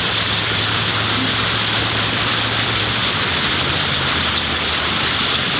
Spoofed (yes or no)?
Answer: yes